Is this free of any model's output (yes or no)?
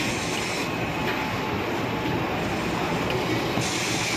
yes